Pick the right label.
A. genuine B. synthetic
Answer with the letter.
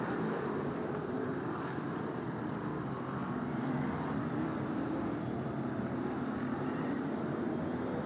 B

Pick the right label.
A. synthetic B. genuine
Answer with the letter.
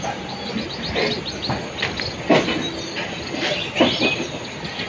B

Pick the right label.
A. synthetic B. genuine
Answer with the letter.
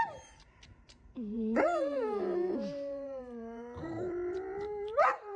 A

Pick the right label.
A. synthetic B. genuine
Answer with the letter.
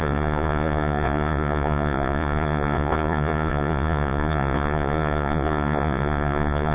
A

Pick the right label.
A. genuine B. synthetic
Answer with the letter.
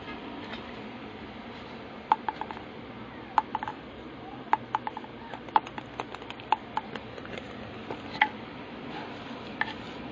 A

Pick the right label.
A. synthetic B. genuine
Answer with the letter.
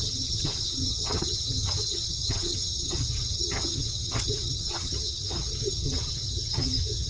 A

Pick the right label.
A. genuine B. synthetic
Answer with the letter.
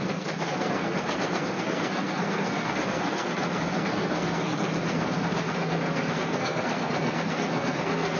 B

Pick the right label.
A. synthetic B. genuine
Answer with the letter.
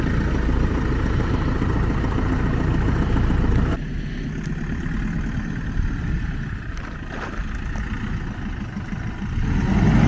B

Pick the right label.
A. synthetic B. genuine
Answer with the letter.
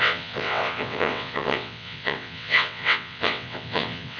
A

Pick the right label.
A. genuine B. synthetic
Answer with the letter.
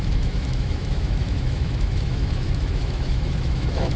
B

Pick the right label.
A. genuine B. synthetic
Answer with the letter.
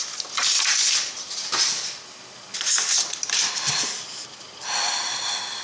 A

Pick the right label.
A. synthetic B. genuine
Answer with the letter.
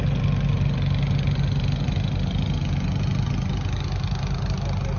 B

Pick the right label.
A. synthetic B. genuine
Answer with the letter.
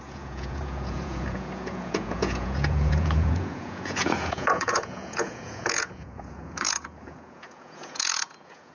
A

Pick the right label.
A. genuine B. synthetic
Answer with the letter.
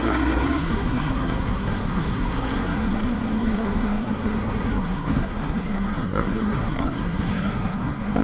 B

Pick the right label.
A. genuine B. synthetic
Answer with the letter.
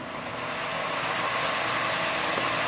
A